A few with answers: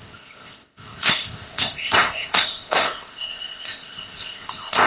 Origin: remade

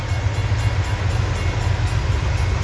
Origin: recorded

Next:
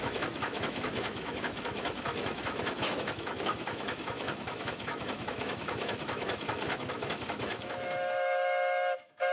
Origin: remade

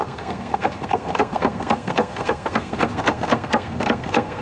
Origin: remade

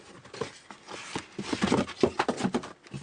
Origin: recorded